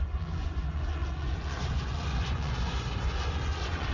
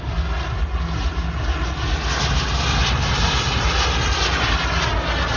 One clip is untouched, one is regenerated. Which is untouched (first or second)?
second